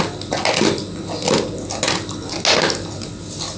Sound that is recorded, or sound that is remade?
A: recorded